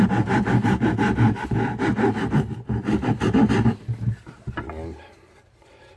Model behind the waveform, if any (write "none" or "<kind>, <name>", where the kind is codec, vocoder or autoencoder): none